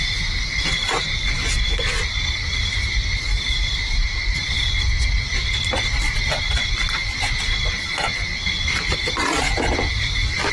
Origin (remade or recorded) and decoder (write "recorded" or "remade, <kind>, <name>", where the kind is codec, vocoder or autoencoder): recorded